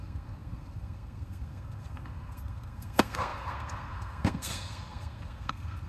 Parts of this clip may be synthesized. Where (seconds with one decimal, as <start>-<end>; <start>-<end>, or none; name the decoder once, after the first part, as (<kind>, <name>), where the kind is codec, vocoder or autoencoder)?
0.0-5.9 (codec, SNAC)